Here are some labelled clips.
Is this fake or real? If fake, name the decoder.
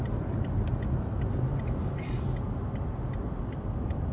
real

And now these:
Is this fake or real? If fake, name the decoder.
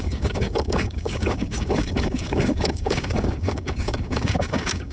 fake, codec, DAC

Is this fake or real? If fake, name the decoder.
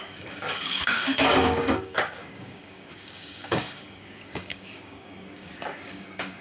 fake, codec, DAC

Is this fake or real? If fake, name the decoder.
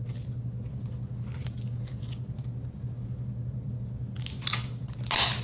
real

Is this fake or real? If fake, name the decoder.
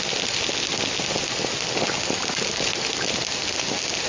real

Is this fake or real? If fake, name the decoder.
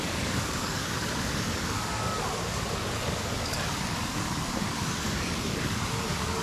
fake, codec, DAC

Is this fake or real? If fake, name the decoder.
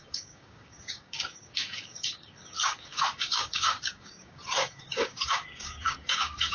fake, codec, DAC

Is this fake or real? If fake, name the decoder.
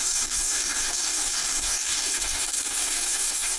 fake, codec, DAC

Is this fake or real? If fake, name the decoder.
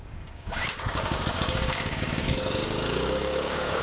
fake, codec, DAC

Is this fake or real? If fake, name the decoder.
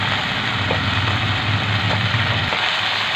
real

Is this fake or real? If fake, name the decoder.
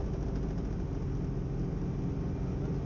real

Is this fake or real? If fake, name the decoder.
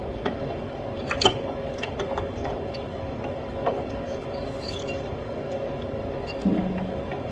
fake, codec, DAC